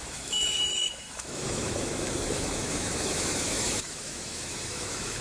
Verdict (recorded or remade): remade